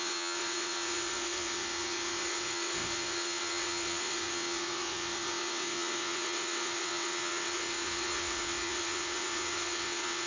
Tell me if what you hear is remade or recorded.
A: remade